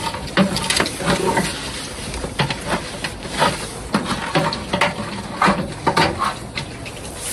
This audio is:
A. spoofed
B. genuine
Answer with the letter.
B